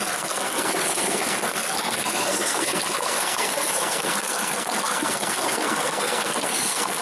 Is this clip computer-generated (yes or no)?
yes